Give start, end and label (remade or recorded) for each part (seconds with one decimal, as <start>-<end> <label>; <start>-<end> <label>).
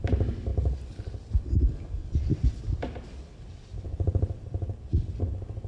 0.0-0.5 recorded; 0.5-1.6 remade; 1.6-2.0 recorded; 2.0-4.4 remade; 4.4-5.7 recorded